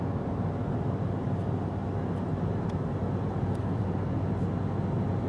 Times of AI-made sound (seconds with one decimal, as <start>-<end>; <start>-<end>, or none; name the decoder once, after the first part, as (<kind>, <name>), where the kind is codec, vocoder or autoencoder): none